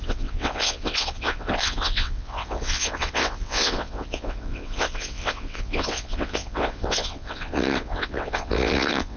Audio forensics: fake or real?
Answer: fake